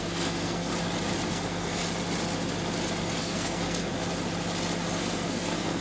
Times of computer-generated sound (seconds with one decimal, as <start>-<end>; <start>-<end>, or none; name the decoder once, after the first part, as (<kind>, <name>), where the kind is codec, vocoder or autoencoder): 0.0-0.7 (codec, SNAC); 1.3-1.8; 3.2-3.9; 5.0-5.8